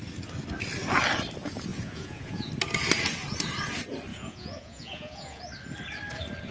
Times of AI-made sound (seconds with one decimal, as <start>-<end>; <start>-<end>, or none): 1.7-2.5; 4.1-5.4